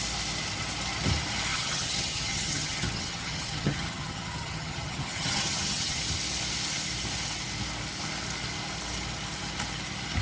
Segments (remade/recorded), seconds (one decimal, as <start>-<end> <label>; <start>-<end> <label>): 0.0-1.5 recorded; 1.5-6.0 remade; 6.0-10.2 recorded